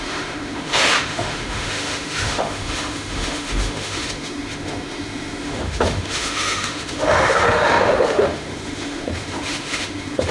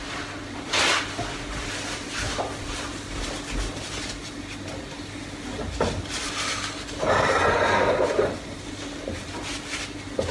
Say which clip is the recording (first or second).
second